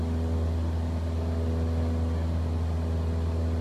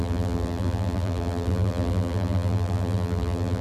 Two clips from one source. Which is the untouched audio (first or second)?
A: first